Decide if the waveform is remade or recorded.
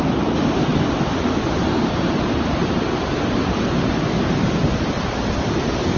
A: recorded